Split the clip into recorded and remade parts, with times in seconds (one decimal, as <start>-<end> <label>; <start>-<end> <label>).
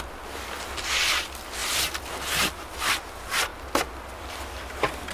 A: 0.0-5.1 recorded